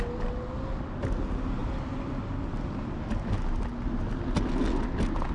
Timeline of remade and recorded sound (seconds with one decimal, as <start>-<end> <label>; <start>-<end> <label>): 0.0-5.3 recorded